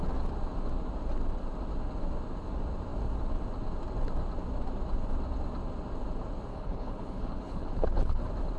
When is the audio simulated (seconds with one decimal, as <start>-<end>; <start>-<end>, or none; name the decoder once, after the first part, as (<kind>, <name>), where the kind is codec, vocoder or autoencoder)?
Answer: 6.5-8.2 (codec, HILCodec)